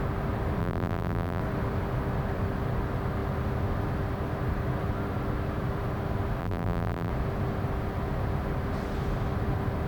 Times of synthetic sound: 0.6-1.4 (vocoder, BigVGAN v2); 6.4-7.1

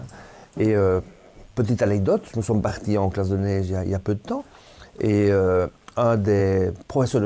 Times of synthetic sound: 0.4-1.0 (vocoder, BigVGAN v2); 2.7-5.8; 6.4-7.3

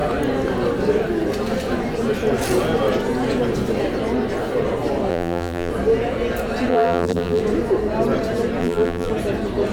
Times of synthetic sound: 5.1-5.7 (vocoder, BigVGAN v2); 6.7-7.4; 8.6-9.1

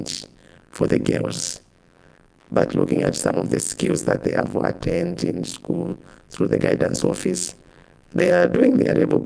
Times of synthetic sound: 0.0-9.3 (vocoder, BigVGAN v2)

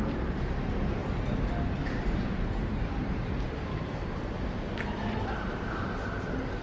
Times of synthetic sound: 1.0-4.2 (vocoder, BigVGAN v2)